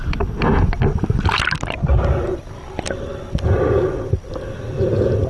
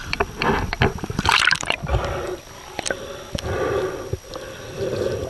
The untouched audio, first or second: first